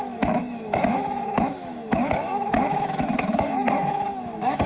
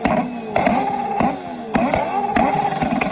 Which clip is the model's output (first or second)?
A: first